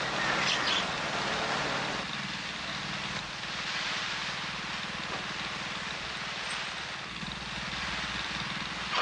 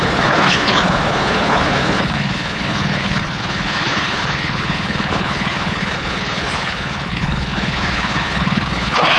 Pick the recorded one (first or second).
first